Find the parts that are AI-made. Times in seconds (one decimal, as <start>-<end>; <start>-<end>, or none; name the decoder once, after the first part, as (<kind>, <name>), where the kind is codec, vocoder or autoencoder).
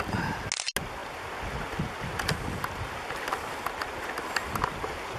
none